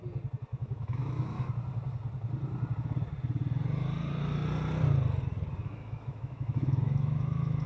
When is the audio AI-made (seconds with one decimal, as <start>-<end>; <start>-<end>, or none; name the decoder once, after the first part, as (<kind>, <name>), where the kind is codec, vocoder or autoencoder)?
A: 0.5-1.5 (autoencoder, DAC-VAE); 5.6-7.7